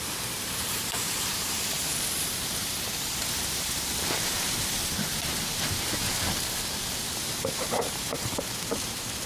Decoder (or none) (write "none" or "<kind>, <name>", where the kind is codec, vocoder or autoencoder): vocoder, BigVGAN v2